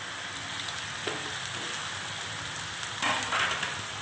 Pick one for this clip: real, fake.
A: real